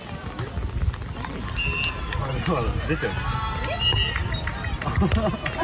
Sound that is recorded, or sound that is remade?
recorded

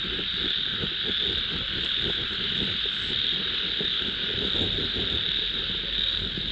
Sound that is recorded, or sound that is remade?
recorded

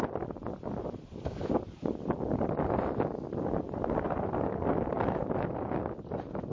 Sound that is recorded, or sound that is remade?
recorded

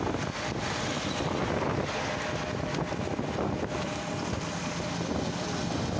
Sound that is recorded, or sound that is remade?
recorded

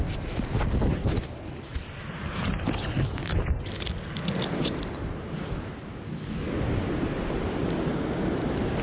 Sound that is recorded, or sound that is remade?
recorded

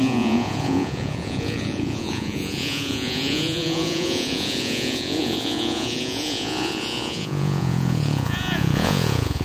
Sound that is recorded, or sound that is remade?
remade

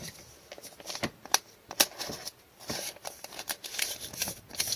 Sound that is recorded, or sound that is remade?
remade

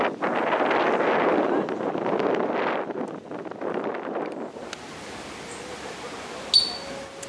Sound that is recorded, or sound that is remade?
recorded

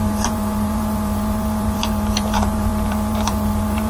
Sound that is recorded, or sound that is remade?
remade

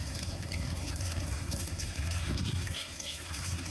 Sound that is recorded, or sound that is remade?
remade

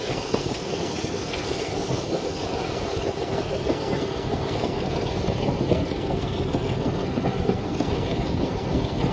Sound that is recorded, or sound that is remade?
remade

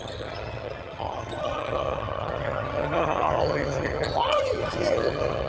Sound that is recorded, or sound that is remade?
remade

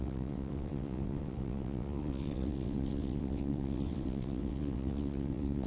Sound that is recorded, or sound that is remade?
remade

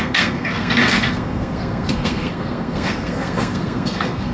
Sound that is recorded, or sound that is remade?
remade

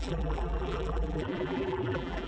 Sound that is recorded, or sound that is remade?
remade